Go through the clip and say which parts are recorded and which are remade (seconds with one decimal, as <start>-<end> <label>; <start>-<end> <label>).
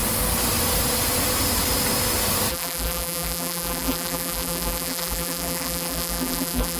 0.0-2.5 recorded; 2.5-6.8 remade